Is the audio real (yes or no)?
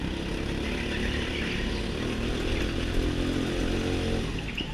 yes